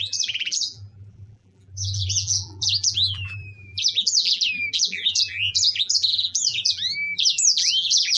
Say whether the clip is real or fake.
fake